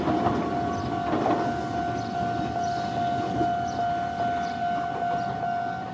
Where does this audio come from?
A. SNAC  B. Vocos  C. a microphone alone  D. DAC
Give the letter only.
C